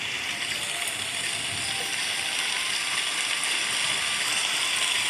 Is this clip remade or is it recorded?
recorded